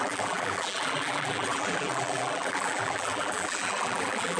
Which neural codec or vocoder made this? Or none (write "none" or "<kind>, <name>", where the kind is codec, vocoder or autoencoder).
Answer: vocoder, BigVGAN v2